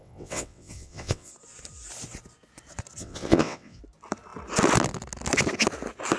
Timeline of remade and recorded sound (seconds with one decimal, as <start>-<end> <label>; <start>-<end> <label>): 0.0-1.3 remade; 1.3-3.0 recorded; 3.0-3.8 remade; 3.8-6.2 recorded